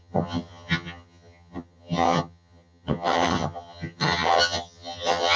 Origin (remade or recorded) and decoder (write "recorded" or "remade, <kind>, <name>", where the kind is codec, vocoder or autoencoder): remade, vocoder, HiFi-GAN